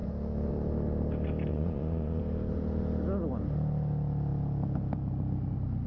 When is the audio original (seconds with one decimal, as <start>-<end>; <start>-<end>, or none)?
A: 0.0-1.5; 2.2-5.9